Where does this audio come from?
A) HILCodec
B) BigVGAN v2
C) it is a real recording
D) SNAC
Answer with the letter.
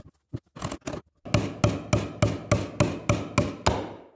C